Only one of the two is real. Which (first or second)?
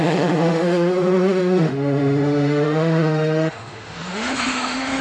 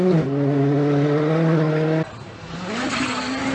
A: second